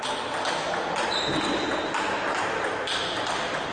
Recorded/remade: recorded